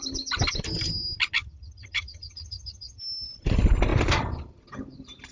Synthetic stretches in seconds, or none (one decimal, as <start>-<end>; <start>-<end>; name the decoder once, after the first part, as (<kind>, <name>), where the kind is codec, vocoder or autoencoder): 1.4-3.0 (vocoder, HiFi-GAN)